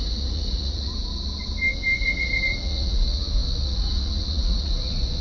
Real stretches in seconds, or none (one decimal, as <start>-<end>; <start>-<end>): 0.9-2.0